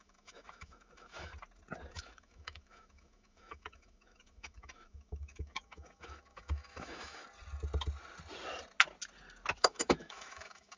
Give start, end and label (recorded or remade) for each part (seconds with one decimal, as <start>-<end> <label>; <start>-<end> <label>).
0.0-1.3 remade; 1.3-1.9 recorded; 1.9-7.2 remade; 7.2-9.6 recorded; 9.6-10.8 remade